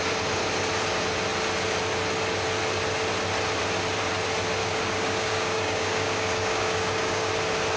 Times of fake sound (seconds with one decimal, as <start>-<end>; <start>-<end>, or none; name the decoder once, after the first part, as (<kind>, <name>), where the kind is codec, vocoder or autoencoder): 4.6-7.3 (codec, DAC)